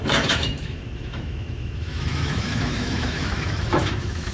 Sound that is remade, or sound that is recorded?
remade